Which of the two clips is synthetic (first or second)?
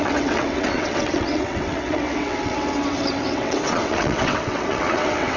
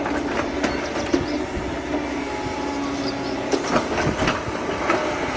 first